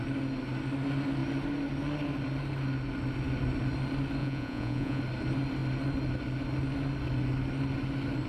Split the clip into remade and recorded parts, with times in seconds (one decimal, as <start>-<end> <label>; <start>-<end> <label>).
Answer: 0.0-4.2 recorded; 4.2-5.0 remade; 5.0-8.3 recorded